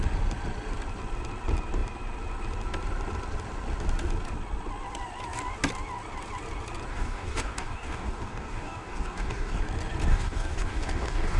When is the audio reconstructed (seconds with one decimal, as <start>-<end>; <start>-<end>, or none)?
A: 6.9-9.6; 10.1-11.4